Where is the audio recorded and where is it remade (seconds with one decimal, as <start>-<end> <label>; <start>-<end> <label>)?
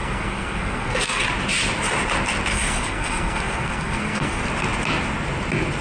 0.0-1.2 remade; 1.2-2.5 recorded; 2.5-4.4 remade; 4.4-5.8 recorded